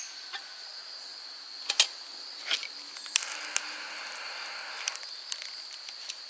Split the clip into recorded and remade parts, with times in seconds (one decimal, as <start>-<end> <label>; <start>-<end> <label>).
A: 0.0-6.3 recorded